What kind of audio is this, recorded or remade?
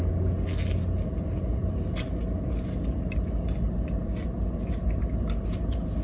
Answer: recorded